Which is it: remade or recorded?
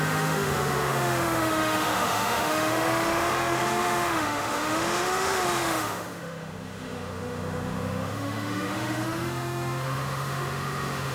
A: remade